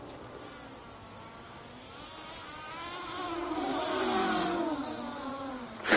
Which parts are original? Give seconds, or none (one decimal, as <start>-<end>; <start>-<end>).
0.0-4.2; 5.5-6.0